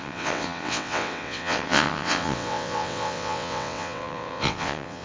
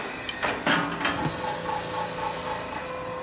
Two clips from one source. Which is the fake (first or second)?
first